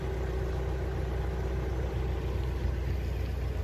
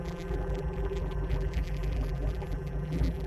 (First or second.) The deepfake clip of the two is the second